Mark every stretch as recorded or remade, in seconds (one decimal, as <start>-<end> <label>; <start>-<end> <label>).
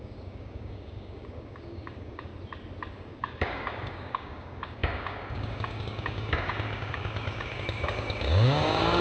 0.0-2.3 remade; 2.3-2.9 recorded; 2.9-9.0 remade